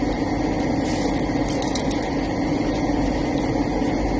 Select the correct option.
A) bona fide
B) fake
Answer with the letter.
A